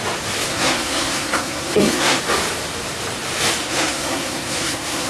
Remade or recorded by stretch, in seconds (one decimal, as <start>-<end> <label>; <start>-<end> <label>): 0.0-0.5 recorded; 0.5-2.2 remade; 2.2-3.6 recorded; 3.6-5.1 remade